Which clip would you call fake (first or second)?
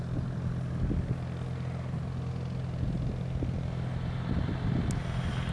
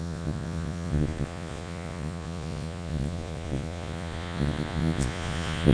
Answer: second